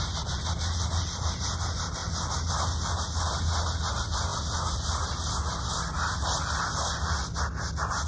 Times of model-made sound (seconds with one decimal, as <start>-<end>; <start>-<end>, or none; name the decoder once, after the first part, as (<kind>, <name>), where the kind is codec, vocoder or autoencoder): none